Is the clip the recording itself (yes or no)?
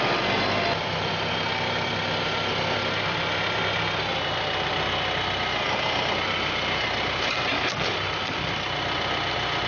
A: yes